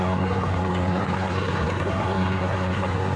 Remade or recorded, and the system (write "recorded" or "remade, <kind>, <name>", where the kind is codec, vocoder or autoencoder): remade, codec, SNAC